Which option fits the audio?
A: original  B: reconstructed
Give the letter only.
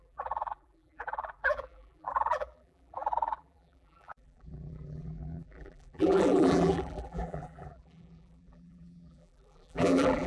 B